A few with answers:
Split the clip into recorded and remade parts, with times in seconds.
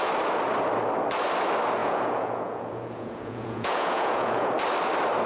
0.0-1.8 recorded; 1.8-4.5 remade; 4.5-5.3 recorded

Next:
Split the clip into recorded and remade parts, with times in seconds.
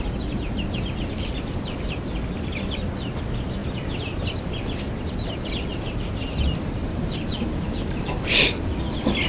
0.0-5.7 recorded; 5.7-8.8 remade; 8.8-9.3 recorded